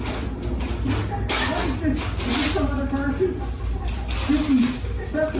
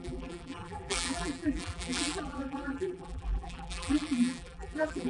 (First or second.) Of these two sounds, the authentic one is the first